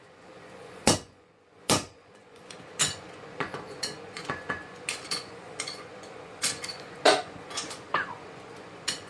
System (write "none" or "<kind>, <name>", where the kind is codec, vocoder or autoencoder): vocoder, Vocos